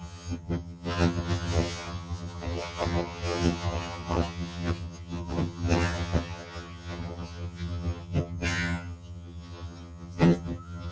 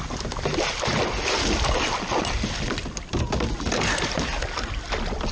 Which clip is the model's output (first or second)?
first